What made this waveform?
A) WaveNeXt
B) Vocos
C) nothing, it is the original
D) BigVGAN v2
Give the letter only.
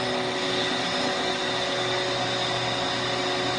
C